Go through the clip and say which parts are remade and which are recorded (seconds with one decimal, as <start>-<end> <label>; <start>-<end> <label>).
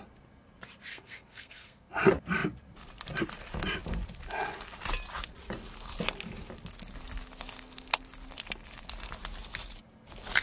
0.0-0.9 recorded; 0.9-1.9 remade; 1.9-10.4 recorded